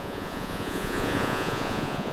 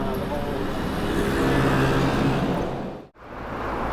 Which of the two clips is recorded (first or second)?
second